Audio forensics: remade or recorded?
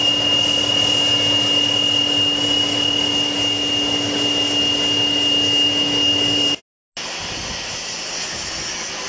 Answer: recorded